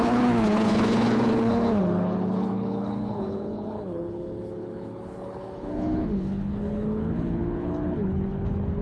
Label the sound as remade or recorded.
remade